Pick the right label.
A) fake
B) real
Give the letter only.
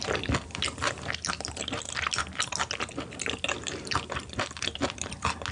B